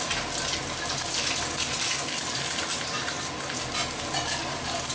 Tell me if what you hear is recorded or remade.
recorded